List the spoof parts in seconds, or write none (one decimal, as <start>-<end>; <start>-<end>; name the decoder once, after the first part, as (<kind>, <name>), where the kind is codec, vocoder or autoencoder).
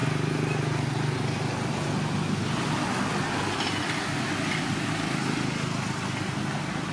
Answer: none